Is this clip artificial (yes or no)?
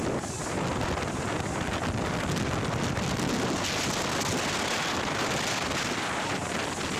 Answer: no